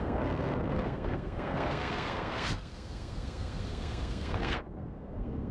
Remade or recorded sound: remade